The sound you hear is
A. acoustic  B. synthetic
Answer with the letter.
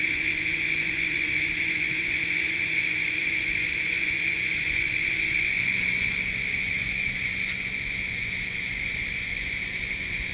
B